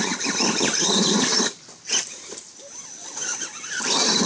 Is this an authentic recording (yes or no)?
yes